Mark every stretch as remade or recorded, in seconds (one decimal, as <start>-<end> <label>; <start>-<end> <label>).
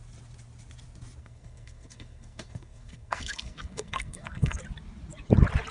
0.0-1.2 recorded; 1.2-4.6 remade; 4.6-5.7 recorded